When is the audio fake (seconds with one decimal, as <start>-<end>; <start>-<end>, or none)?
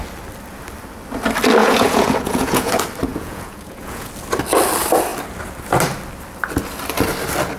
1.6-2.7; 3.1-4.1